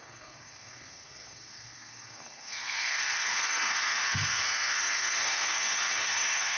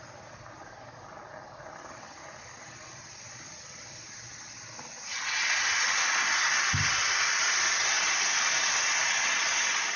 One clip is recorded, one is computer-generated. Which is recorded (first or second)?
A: second